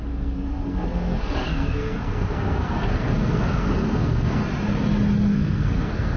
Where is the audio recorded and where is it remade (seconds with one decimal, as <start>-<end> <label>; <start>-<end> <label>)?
0.0-4.4 remade; 4.4-5.3 recorded; 5.3-6.2 remade